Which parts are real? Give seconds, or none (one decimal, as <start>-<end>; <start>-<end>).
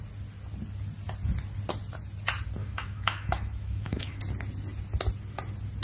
0.0-2.6; 4.2-5.8